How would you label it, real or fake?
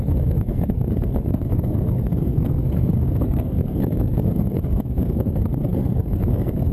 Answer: fake